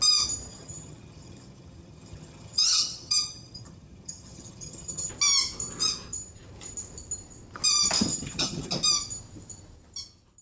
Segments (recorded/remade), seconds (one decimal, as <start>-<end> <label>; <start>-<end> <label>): 0.0-0.5 recorded; 0.5-5.1 remade; 5.1-8.1 recorded; 8.1-8.7 remade; 8.7-10.4 recorded